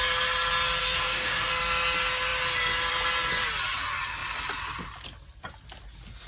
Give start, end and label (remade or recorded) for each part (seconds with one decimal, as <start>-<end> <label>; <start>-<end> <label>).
0.0-0.8 recorded; 0.8-1.5 remade; 1.5-6.3 recorded